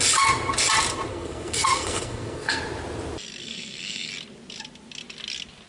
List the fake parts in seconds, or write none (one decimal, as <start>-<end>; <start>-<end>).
1.1-2.6; 3.4-4.1